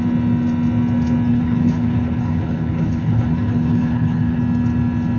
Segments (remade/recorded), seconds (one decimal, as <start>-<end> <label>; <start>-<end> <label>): 0.0-1.3 recorded; 1.3-4.4 remade; 4.4-5.2 recorded